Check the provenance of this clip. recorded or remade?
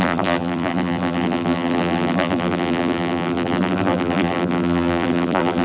remade